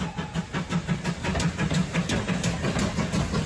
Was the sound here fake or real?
real